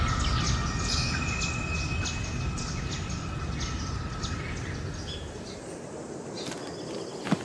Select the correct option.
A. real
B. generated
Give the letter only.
A